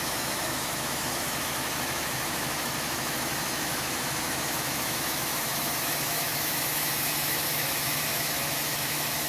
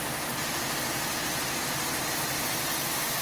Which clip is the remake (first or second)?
first